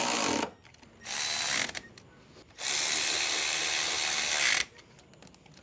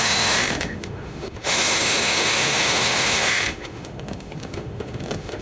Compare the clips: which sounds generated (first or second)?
second